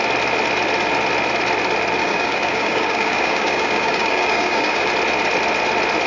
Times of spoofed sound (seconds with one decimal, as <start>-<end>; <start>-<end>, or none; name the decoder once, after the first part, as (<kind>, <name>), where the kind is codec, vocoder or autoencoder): 2.0-4.9 (codec, DAC)